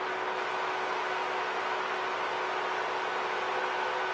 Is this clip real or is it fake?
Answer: real